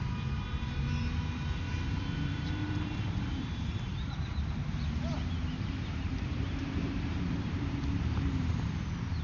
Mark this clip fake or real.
fake